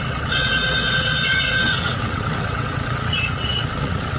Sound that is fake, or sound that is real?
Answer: fake